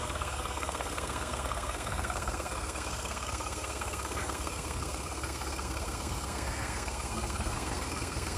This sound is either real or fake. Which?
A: fake